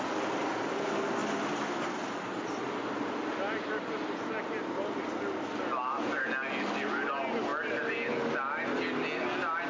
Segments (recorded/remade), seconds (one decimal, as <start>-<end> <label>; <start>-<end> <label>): 0.0-9.7 recorded